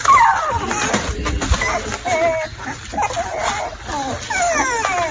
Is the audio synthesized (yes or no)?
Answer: no